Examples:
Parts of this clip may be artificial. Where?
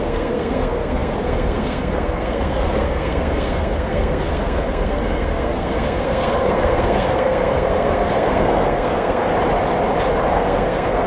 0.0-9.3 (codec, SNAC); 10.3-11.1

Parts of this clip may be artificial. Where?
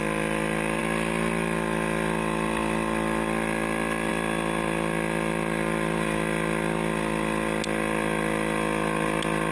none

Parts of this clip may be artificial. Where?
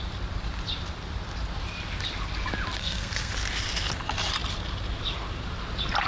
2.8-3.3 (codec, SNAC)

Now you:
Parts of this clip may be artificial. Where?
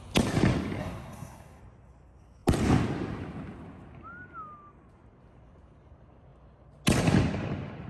0.8-1.6 (codec, SNAC)